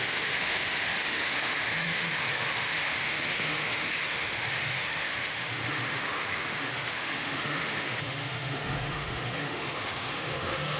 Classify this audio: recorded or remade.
remade